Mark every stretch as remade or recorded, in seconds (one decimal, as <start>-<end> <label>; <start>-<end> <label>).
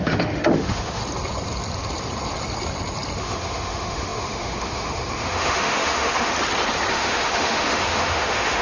0.0-1.0 remade; 1.0-3.2 recorded; 3.2-6.3 remade; 6.3-6.9 recorded; 6.9-8.6 remade